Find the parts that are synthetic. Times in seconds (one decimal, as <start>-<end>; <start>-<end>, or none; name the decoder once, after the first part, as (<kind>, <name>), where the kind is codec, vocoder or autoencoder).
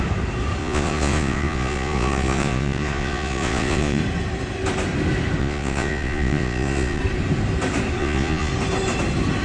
0.6-4.0 (vocoder, Vocos); 5.4-7.0; 8.0-8.5